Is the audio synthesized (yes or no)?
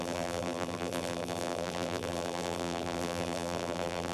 yes